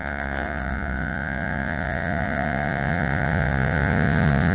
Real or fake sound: fake